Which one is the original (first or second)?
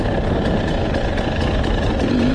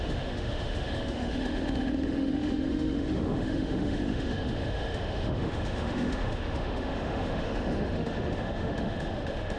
first